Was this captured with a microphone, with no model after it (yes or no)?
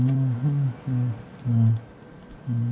yes